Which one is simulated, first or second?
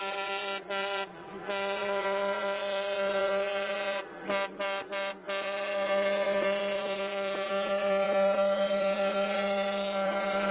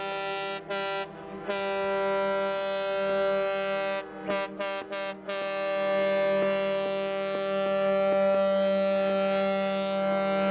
first